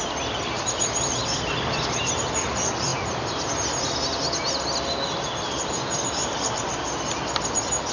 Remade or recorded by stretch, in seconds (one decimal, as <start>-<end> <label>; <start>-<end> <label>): 0.0-7.9 recorded